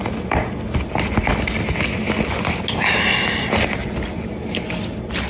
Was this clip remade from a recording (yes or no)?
no